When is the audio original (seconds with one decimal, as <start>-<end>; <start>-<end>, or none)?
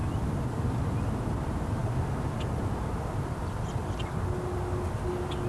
0.0-5.5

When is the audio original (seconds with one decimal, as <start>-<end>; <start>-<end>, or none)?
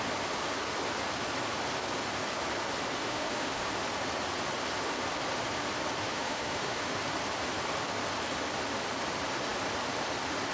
0.0-3.0; 3.7-6.0; 7.0-10.5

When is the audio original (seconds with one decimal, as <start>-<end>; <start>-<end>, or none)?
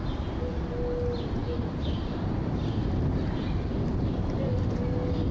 0.0-5.3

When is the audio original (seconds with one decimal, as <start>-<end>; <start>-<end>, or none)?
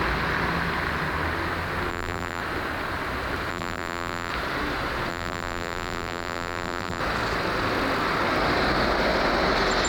0.0-1.9; 2.4-3.5; 4.3-5.1; 7.0-9.9